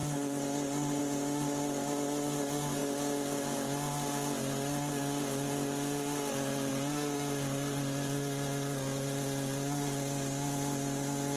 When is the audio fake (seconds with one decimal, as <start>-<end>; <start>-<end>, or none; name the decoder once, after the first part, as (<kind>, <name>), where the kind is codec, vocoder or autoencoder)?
none